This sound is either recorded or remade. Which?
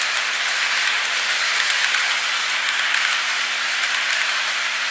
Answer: recorded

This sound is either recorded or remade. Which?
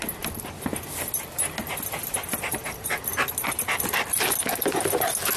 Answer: recorded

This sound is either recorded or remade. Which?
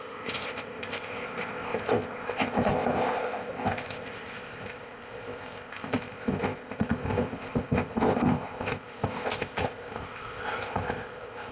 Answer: remade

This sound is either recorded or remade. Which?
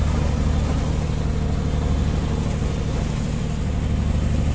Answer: recorded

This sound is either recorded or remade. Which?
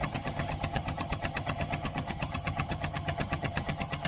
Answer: remade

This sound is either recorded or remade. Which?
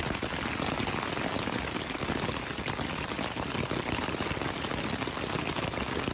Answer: recorded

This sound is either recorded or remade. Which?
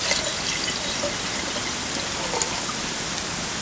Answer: recorded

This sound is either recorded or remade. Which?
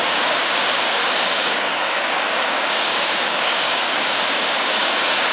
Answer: remade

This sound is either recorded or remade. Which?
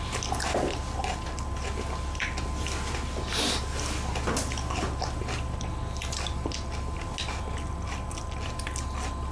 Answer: recorded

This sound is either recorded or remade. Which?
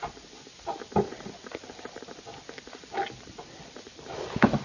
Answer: recorded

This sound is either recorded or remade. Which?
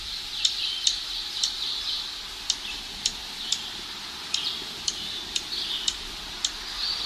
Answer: recorded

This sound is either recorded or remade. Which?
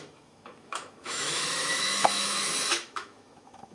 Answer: remade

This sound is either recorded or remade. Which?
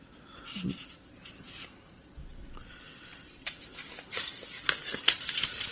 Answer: remade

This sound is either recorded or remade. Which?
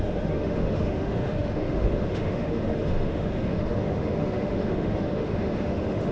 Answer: remade